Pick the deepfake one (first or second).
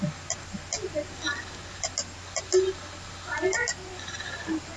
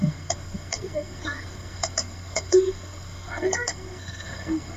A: second